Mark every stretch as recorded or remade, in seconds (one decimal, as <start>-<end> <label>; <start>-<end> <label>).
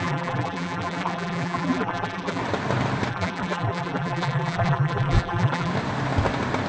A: 0.0-2.4 remade; 2.4-3.1 recorded; 3.1-5.7 remade; 5.7-6.7 recorded